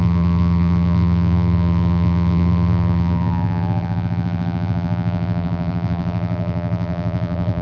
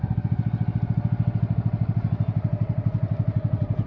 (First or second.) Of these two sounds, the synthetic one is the first